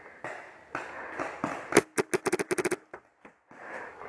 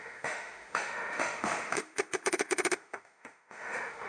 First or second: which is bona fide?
first